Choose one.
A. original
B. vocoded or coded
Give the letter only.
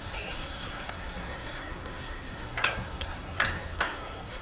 B